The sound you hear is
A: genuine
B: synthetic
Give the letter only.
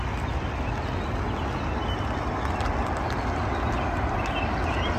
A